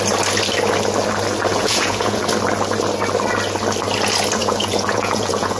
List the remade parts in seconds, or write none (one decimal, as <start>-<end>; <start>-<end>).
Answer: 1.5-2.2; 4.4-5.6